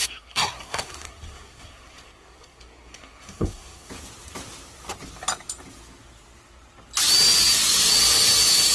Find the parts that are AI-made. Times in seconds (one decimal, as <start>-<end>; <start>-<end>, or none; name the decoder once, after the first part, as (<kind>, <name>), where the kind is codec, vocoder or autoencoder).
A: 0.0-3.9 (codec, SNAC)